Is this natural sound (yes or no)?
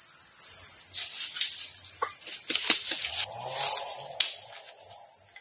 yes